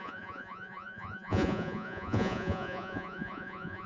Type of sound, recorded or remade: remade